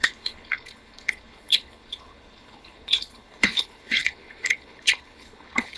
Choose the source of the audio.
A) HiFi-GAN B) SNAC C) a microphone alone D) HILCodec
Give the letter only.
D